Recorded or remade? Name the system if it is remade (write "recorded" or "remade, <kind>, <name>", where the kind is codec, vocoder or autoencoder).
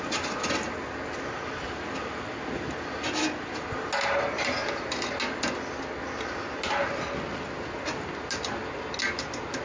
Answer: recorded